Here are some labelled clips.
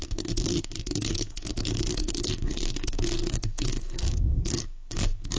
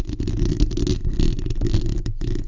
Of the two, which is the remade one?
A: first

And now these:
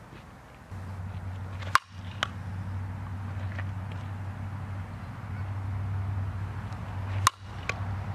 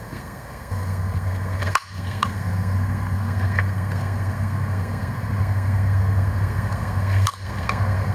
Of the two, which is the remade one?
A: second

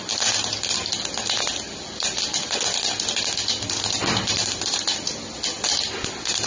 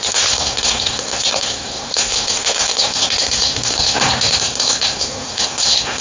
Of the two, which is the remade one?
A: second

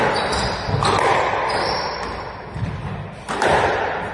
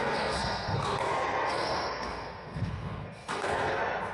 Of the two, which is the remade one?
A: second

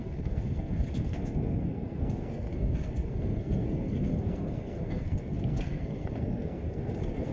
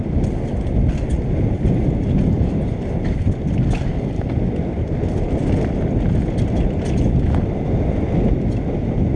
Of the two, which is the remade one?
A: first